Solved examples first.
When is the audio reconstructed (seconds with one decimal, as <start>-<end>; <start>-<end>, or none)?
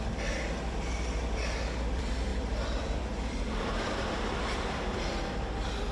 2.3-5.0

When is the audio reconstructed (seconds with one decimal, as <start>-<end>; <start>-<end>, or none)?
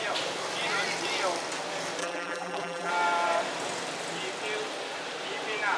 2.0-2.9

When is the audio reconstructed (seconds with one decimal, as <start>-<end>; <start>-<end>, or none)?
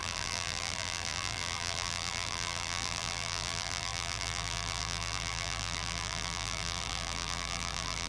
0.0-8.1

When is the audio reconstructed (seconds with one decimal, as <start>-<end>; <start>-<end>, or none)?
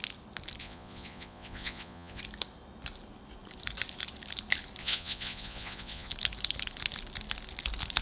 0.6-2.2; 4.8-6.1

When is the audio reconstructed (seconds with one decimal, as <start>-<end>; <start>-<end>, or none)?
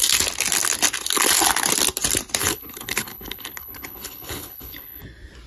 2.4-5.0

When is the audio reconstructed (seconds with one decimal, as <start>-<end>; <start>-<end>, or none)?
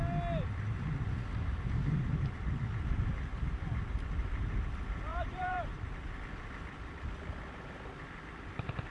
5.1-5.8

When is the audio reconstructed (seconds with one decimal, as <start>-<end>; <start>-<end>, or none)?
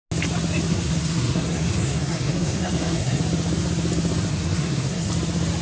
0.7-3.2; 4.3-5.1